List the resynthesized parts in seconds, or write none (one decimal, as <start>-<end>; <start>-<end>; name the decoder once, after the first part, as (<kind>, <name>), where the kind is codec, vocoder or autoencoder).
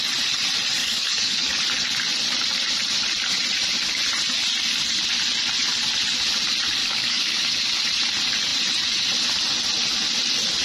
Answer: 0.8-1.6 (codec, DAC); 6.8-7.6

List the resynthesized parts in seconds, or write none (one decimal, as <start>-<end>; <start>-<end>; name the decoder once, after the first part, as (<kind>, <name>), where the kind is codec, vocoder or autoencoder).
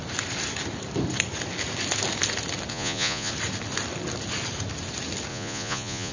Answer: 2.7-3.3 (vocoder, Vocos); 5.3-6.1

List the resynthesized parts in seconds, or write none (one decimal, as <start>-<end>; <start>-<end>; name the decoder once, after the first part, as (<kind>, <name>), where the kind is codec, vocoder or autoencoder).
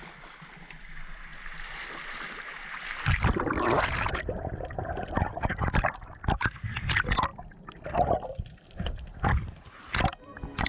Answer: none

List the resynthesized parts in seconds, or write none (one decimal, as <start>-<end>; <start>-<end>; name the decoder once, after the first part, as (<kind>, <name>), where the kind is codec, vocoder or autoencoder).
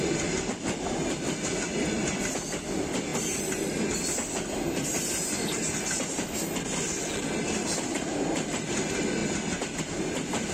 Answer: none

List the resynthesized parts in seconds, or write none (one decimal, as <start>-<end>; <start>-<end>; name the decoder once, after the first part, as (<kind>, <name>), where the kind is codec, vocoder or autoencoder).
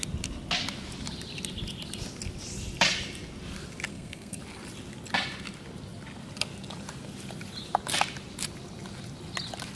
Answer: 3.9-4.4 (codec, SNAC)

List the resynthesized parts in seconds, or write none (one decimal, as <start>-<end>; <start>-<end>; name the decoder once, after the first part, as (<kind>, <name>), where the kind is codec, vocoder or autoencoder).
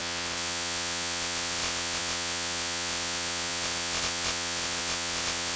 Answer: 0.0-5.6 (vocoder, WaveNeXt)